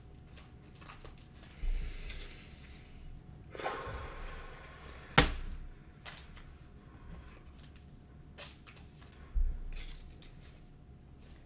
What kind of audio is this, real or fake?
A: real